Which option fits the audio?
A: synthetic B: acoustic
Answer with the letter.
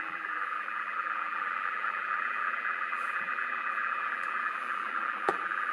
A